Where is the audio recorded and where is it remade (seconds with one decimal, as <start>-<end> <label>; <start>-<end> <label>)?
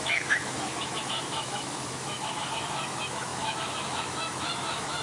0.0-5.0 remade